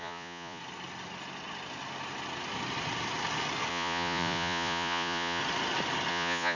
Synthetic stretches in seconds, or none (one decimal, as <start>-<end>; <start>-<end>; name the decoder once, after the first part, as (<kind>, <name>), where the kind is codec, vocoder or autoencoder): 0.0-0.6 (vocoder, Vocos); 3.7-5.4; 6.1-6.6